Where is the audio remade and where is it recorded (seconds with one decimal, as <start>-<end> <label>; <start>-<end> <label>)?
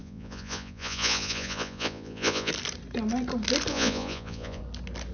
0.0-2.5 remade; 2.5-3.7 recorded; 3.7-4.6 remade; 4.6-5.1 recorded